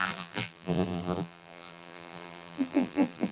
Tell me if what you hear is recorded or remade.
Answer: remade